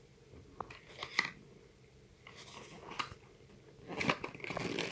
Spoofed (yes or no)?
no